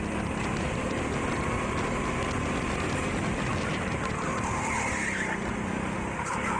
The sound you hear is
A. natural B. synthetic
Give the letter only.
A